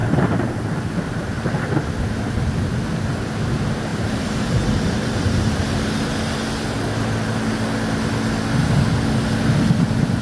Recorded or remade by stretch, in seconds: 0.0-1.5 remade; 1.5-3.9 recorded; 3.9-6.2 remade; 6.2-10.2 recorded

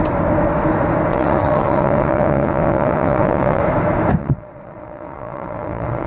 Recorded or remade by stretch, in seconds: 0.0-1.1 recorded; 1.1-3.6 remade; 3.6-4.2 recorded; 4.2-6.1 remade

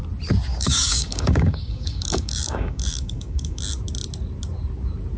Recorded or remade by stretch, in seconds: 0.0-0.5 recorded; 0.5-3.6 remade; 3.6-5.2 recorded